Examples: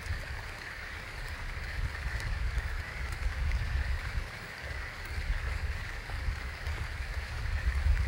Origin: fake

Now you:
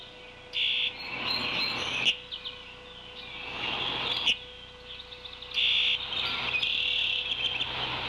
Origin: real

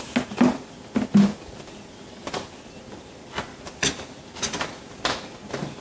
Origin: real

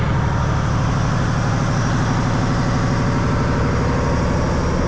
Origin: real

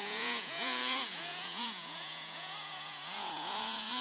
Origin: fake